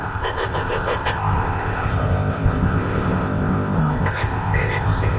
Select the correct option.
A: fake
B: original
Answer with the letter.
A